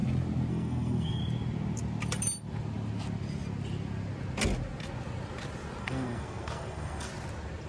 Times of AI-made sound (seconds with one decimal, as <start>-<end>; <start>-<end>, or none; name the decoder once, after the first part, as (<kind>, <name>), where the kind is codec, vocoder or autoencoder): 0.5-1.2 (codec, SNAC); 5.8-7.1